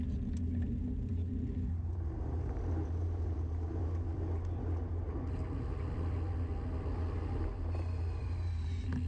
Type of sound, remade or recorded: recorded